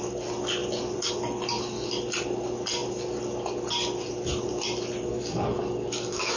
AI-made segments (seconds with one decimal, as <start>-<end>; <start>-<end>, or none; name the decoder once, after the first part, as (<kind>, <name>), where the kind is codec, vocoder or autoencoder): 5.1-6.4 (codec, DAC)